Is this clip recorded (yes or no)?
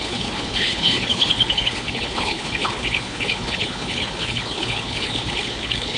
no